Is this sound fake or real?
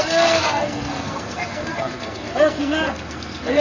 fake